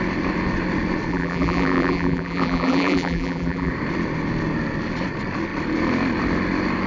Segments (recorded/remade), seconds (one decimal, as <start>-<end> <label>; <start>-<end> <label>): 0.0-1.1 recorded; 1.1-3.7 remade; 3.7-6.9 recorded